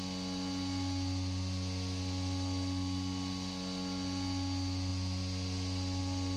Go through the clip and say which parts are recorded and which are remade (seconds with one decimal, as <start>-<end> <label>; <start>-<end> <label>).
0.0-6.4 recorded